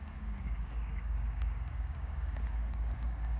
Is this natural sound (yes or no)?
no